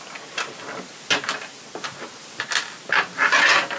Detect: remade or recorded recorded